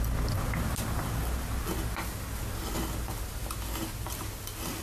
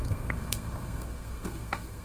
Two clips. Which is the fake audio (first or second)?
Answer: second